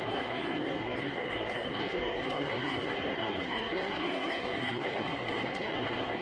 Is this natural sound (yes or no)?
no